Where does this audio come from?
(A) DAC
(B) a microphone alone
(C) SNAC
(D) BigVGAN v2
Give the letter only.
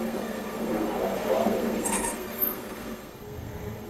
C